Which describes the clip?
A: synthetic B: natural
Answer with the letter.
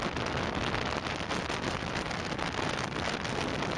B